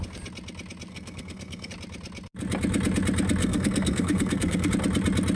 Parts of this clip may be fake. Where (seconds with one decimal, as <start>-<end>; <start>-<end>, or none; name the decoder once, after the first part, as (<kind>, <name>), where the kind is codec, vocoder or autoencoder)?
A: 0.9-1.7 (codec, SNAC); 3.4-4.7